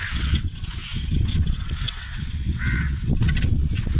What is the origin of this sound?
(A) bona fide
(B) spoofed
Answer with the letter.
B